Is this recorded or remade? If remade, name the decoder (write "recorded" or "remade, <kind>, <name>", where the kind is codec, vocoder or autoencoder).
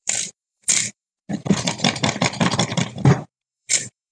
remade, vocoder, BigVGAN v2